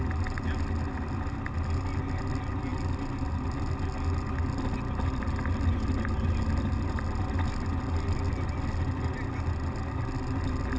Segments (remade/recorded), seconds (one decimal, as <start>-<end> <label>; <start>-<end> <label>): 0.0-10.8 recorded

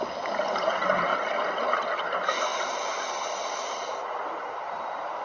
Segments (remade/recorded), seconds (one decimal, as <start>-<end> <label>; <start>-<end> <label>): 0.0-5.2 recorded

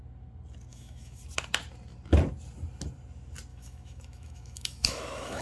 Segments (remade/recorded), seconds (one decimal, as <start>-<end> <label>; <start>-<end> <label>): 0.0-0.7 recorded; 0.7-1.2 remade; 1.2-3.5 recorded; 3.5-5.4 remade

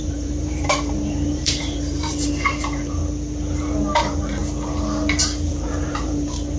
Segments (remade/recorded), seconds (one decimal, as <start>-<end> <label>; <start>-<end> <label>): 0.0-3.0 remade; 3.0-4.0 recorded; 4.0-4.4 remade; 4.4-5.5 recorded; 5.5-6.6 remade